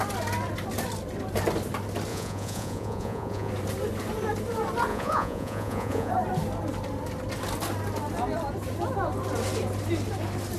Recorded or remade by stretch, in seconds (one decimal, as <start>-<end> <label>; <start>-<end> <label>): 0.0-2.1 recorded; 2.1-3.5 remade; 3.5-4.9 recorded; 4.9-6.1 remade; 6.1-10.6 recorded